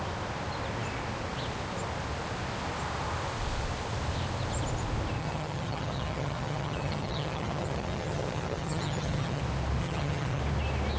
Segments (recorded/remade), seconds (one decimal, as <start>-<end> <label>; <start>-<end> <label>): 0.0-5.2 recorded; 5.2-9.4 remade; 9.4-9.8 recorded; 9.8-10.4 remade; 10.4-11.0 recorded

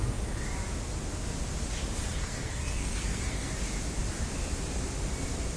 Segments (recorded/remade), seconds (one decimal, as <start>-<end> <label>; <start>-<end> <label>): 0.0-2.1 recorded; 2.1-3.5 remade; 3.5-5.6 recorded

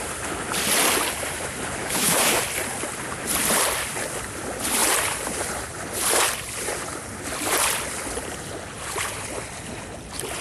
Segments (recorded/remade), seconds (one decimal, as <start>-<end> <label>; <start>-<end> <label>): 0.0-1.8 recorded; 1.8-2.4 remade; 2.4-10.4 recorded

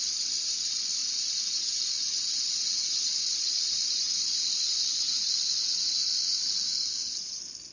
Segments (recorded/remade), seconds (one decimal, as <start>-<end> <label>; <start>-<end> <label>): 0.0-1.0 recorded; 1.0-4.1 remade; 4.1-7.7 recorded